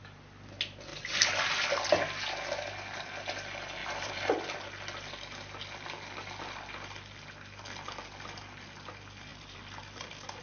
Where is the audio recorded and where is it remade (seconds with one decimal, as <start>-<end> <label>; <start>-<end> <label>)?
0.0-0.9 recorded; 0.9-1.5 remade; 1.5-3.8 recorded; 3.8-4.3 remade; 4.3-9.3 recorded; 9.3-10.4 remade